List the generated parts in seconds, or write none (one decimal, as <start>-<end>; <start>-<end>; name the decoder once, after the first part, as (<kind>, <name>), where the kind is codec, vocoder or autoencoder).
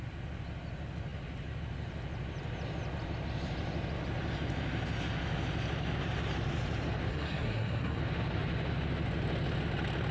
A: 7.1-8.0 (codec, SNAC)